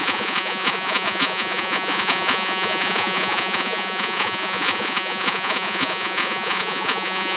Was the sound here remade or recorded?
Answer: remade